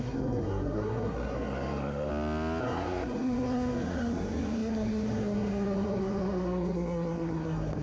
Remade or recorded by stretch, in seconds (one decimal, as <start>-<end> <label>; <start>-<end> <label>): 0.0-2.1 remade; 2.1-2.6 recorded; 2.6-7.8 remade